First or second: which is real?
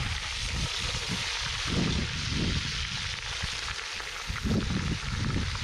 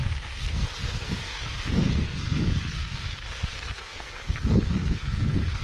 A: first